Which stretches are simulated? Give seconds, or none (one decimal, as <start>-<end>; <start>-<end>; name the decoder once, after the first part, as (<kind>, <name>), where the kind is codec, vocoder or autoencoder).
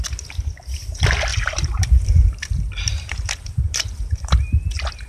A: 1.3-4.4 (vocoder, BigVGAN v2)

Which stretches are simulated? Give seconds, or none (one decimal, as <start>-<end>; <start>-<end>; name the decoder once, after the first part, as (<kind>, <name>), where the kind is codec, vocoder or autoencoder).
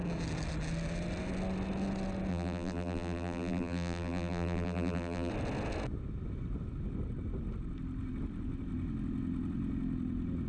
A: 2.3-5.3 (vocoder, BigVGAN v2)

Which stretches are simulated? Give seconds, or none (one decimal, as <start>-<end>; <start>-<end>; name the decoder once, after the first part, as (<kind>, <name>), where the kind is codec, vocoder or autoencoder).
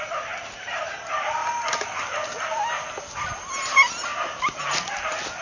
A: 0.0-1.4 (vocoder, BigVGAN v2); 4.6-5.4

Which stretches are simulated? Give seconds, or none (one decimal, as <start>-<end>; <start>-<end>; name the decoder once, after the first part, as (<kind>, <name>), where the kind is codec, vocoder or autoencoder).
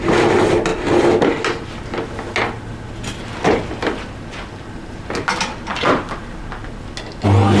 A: 5.7-6.4 (vocoder, BigVGAN v2)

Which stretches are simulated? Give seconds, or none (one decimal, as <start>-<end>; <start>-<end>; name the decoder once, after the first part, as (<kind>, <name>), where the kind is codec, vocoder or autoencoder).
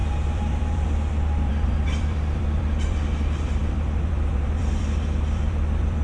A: 0.0-6.0 (vocoder, BigVGAN v2)